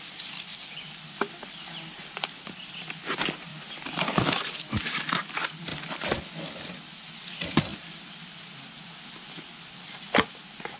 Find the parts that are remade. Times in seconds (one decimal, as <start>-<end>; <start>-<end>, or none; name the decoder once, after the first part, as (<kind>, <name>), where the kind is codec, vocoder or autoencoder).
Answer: 0.5-2.0 (vocoder, BigVGAN v2); 3.5-4.8; 7.7-8.4